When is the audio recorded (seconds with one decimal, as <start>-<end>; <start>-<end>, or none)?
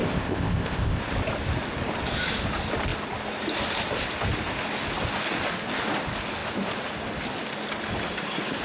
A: 1.0-8.6